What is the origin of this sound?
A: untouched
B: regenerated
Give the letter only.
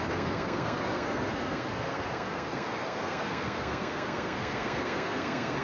B